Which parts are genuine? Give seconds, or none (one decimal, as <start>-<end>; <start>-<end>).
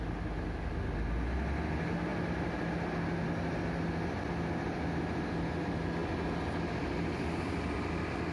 0.0-8.3